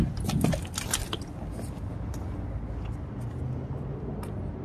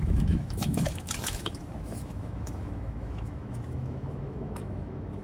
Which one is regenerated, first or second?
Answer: second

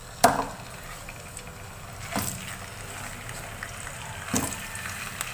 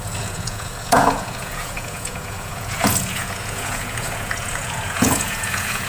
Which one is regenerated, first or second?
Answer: second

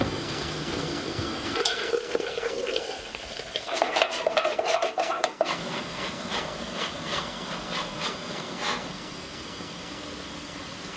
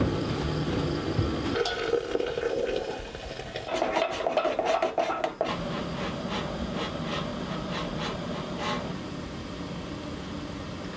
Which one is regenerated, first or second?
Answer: first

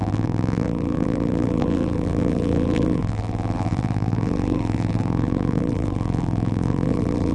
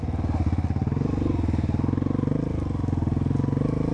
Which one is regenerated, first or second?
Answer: first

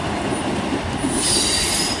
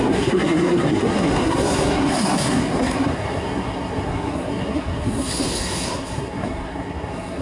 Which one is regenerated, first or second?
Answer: second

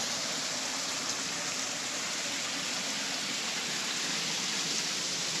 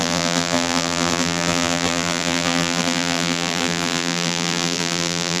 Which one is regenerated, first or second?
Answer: second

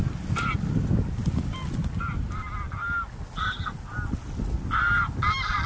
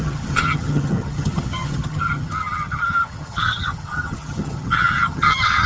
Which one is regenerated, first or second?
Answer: second